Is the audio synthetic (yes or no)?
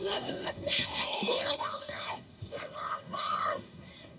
yes